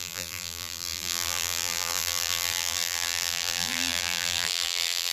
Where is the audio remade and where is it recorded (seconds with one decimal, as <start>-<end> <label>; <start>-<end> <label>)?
0.0-5.1 remade